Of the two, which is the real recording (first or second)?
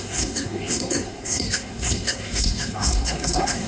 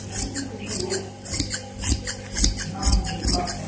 second